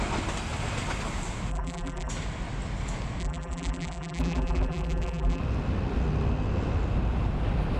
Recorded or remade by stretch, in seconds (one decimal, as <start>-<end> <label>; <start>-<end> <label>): 0.0-1.5 recorded; 1.5-2.1 remade; 2.1-3.2 recorded; 3.2-5.4 remade; 5.4-7.8 recorded